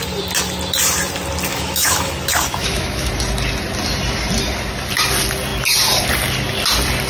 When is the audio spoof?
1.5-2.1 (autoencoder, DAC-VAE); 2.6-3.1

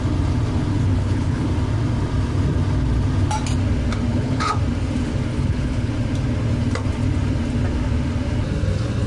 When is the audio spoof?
0.7-1.5 (codec, HILCodec); 4.1-4.6; 5.3-5.9

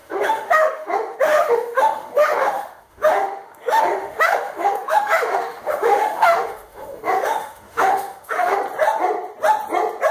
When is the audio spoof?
0.0-8.6 (autoencoder, DAC-VAE)

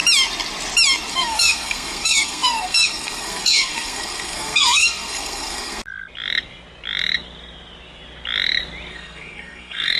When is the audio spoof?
1.1-5.8 (codec, SNAC); 8.9-10.0

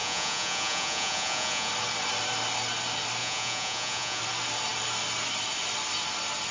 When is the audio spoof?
0.0-1.7 (vocoder, Vocos); 3.2-4.2